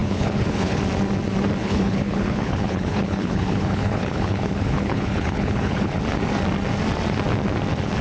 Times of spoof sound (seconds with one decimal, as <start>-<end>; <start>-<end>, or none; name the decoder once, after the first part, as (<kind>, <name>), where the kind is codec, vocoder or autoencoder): 0.0-0.8 (codec, HILCodec); 1.6-6.0

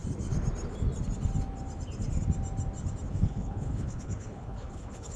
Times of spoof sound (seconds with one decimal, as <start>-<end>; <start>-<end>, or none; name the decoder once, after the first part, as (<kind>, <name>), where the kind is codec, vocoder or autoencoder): 3.1-5.2 (codec, HILCodec)

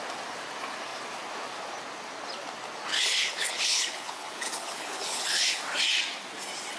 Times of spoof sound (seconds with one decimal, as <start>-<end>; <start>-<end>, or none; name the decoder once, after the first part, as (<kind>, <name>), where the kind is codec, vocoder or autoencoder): 2.9-5.6 (codec, HILCodec)